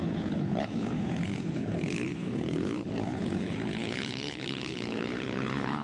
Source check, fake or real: fake